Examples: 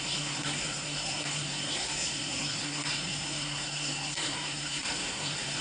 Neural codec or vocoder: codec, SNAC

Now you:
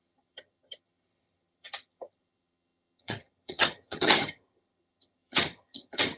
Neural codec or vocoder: vocoder, HiFi-GAN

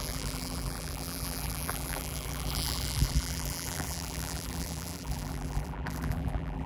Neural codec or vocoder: vocoder, BigVGAN v2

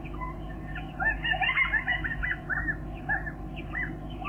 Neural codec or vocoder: none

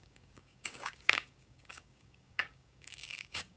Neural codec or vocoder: codec, DAC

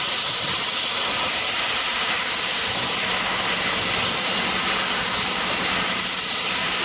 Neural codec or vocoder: none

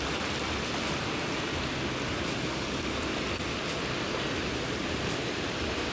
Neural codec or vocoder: none